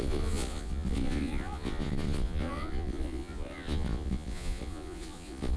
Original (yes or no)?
no